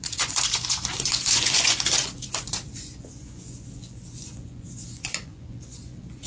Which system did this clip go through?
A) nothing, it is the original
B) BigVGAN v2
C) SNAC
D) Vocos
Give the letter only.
D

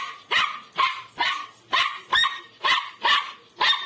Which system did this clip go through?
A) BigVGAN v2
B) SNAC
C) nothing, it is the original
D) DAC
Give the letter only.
C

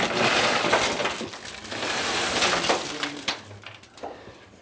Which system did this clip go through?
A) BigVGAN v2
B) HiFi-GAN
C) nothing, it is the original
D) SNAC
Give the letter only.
C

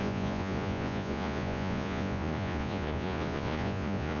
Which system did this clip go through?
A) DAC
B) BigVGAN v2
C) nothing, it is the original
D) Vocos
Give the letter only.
D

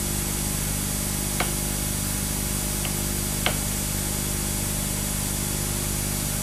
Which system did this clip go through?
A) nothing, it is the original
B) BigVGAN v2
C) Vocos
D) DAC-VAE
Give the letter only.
A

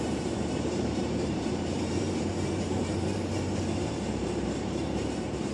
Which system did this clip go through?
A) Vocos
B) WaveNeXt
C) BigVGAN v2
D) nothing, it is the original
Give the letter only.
C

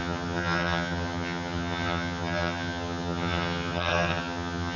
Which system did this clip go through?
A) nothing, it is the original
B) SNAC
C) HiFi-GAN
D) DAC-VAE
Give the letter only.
C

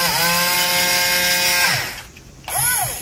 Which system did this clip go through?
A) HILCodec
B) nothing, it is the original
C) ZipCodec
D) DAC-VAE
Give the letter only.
B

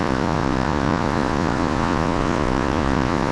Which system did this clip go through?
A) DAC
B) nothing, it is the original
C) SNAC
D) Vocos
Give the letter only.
D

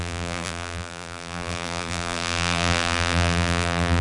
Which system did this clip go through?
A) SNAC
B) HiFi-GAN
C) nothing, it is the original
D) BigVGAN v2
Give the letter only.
D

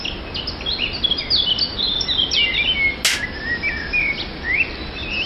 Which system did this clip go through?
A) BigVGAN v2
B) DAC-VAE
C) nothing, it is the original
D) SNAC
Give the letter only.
C